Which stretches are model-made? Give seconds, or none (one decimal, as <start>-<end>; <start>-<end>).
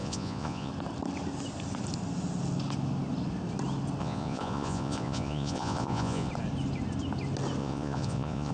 0.0-0.7; 4.0-6.3; 7.6-8.5